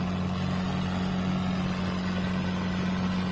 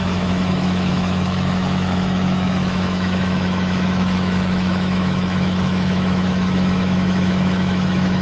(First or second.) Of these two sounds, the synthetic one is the second